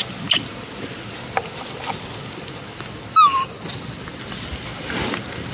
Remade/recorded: recorded